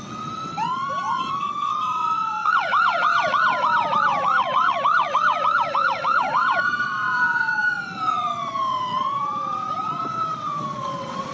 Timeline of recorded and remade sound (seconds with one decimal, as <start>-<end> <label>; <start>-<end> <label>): 0.0-11.3 remade